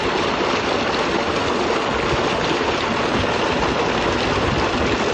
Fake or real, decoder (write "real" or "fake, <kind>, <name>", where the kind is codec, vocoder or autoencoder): real